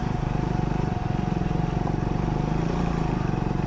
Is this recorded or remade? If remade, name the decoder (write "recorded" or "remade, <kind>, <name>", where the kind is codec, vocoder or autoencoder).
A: remade, vocoder, BigVGAN v2